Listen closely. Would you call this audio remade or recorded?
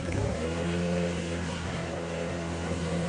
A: remade